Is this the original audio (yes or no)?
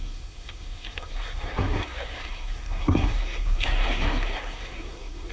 no